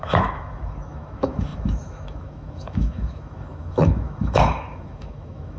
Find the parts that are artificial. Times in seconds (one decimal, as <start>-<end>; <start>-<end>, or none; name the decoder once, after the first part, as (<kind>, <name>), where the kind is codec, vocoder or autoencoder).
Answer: 0.0-5.6 (autoencoder, DAC-VAE)